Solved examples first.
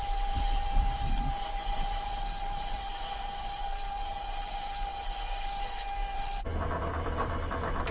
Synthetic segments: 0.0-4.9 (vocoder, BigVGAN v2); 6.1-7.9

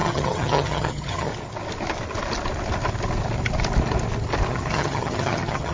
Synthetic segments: 0.0-1.3 (vocoder, HiFi-GAN); 4.5-5.7

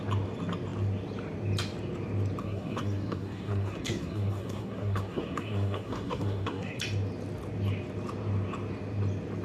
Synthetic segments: 2.4-6.8 (codec, SNAC)

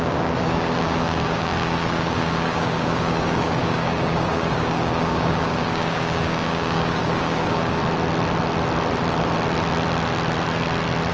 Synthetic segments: 0.0-7.8 (codec, DAC)

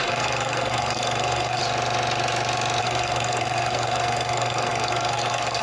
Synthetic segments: 0.0-1.6 (codec, SNAC); 2.8-5.6

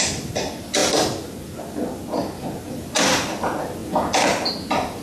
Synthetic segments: none

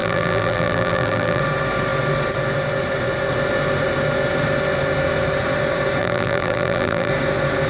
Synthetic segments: 0.0-1.4 (vocoder, BigVGAN v2); 6.0-7.1

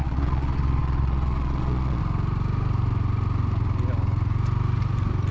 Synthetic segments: 0.0-2.0 (vocoder, Vocos)